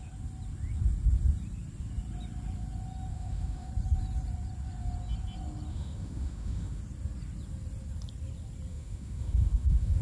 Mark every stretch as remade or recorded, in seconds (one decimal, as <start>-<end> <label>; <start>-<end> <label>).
0.0-3.1 recorded; 3.1-3.7 remade; 3.7-5.7 recorded; 5.7-6.8 remade; 6.8-8.7 recorded; 8.7-10.0 remade